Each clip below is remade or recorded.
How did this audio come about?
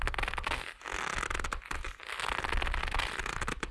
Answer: recorded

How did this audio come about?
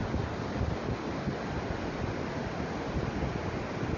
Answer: recorded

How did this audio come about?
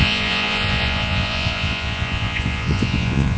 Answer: remade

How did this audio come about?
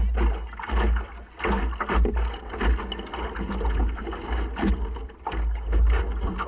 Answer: recorded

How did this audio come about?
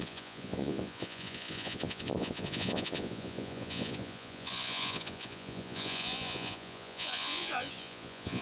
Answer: remade